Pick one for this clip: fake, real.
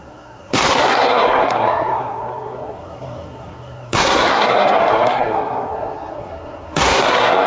fake